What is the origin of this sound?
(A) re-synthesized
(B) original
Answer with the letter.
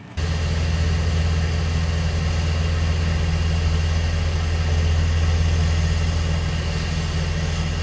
B